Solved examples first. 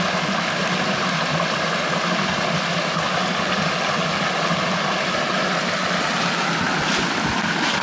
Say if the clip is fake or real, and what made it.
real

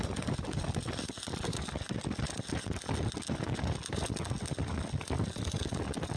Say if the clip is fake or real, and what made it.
real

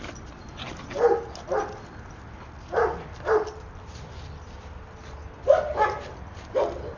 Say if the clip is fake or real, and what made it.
real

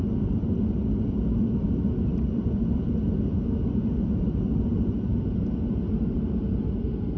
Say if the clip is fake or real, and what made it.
fake, vocoder, BigVGAN v2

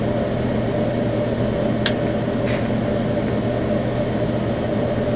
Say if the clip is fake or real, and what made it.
real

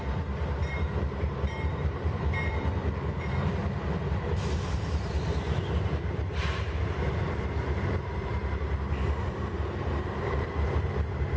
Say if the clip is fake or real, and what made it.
fake, vocoder, BigVGAN v2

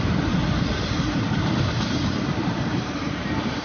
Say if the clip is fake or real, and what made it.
fake, vocoder, BigVGAN v2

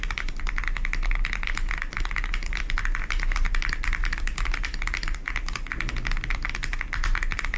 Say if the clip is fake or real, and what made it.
real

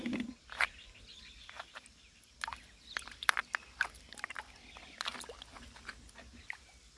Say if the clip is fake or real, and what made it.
real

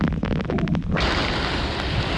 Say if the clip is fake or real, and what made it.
real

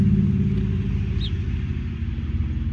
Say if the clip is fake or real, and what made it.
real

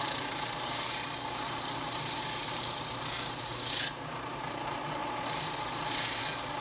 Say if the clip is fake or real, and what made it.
fake, vocoder, BigVGAN v2